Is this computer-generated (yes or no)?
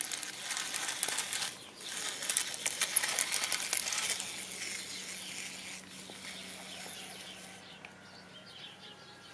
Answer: no